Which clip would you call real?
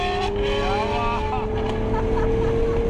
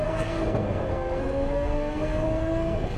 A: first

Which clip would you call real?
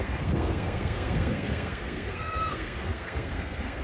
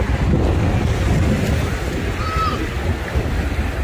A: second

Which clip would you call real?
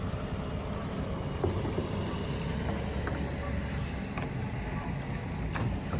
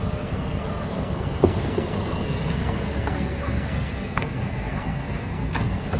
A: first